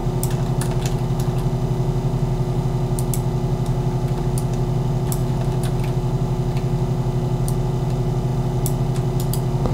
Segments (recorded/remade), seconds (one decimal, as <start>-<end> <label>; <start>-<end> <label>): 0.0-9.7 recorded